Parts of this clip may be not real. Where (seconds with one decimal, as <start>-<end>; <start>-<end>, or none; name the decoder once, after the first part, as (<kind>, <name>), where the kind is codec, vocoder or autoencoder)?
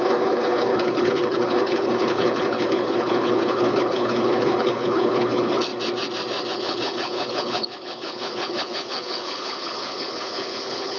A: 0.0-5.7 (codec, HILCodec); 6.5-11.0